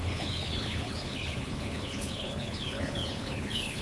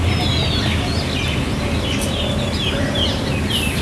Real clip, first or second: second